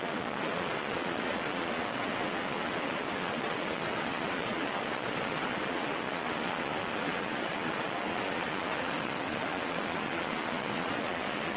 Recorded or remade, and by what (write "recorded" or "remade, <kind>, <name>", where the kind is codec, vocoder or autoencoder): remade, vocoder, Vocos